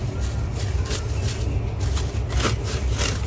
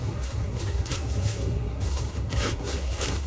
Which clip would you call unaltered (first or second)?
first